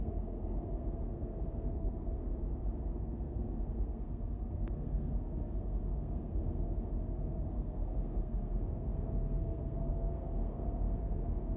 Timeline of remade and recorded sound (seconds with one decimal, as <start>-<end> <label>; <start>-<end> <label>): 0.0-2.5 remade; 2.5-3.0 recorded; 3.0-6.9 remade; 6.9-7.5 recorded; 7.5-11.6 remade